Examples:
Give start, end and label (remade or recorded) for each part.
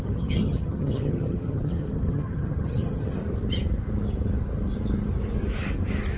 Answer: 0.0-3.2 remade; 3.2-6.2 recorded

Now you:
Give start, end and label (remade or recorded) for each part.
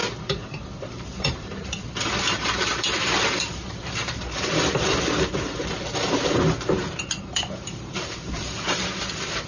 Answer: 0.0-0.8 recorded; 0.8-9.5 remade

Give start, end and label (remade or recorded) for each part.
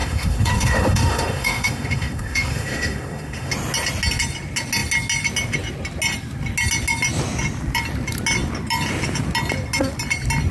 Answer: 0.0-3.5 remade; 3.5-10.5 recorded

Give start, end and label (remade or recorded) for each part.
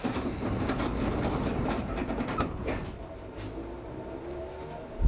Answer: 0.0-5.1 recorded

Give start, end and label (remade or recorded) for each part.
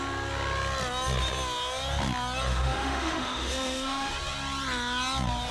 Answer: 0.0-2.5 recorded; 2.5-4.1 remade; 4.1-5.5 recorded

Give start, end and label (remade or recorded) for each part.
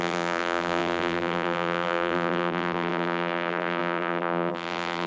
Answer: 0.0-5.1 remade